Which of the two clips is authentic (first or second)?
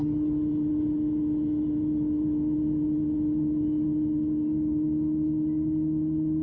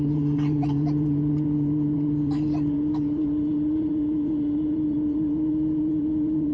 first